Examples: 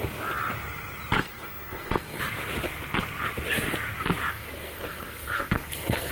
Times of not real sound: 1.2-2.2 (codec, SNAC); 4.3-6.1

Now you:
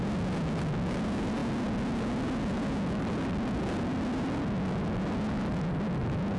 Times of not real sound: none

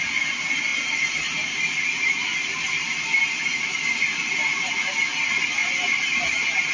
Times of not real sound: none

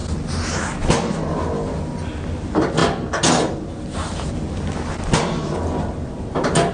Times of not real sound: none

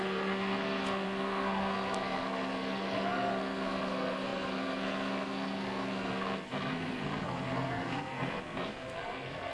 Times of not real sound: 0.0-9.5 (codec, SNAC)

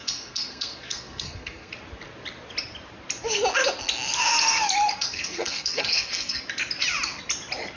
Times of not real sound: 0.0-1.7 (codec, SNAC); 4.9-6.4